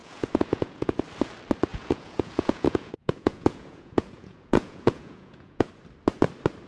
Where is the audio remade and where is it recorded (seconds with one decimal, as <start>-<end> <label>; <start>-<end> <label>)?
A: 0.0-1.0 remade; 1.0-1.7 recorded; 1.7-5.7 remade; 5.7-6.7 recorded